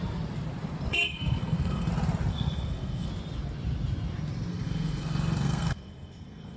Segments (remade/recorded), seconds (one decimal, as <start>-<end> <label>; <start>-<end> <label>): 0.0-0.9 recorded; 0.9-1.9 remade; 1.9-2.3 recorded; 2.3-3.1 remade; 3.1-4.5 recorded; 4.5-6.6 remade